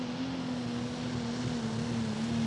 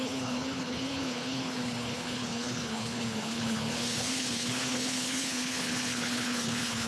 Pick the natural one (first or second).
first